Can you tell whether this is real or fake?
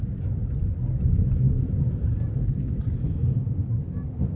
real